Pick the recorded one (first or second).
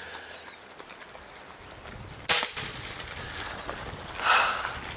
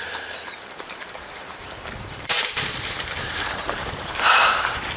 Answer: first